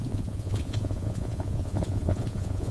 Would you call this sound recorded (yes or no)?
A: no